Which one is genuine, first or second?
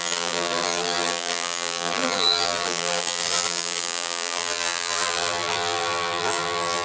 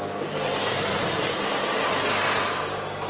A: second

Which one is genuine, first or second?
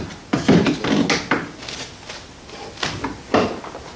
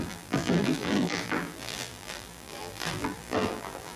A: first